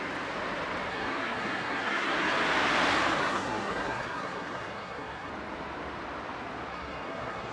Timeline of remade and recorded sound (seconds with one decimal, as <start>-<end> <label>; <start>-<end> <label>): 0.0-0.9 recorded; 0.9-2.3 remade; 2.3-3.2 recorded; 3.2-5.3 remade; 5.3-6.7 recorded; 6.7-7.5 remade